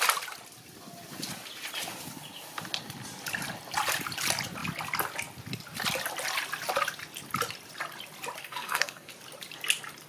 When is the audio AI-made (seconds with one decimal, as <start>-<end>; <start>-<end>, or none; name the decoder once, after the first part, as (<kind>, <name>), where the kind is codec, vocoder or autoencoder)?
8.4-9.1 (codec, SNAC)